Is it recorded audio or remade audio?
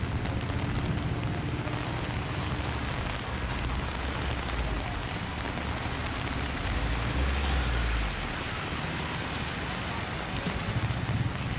recorded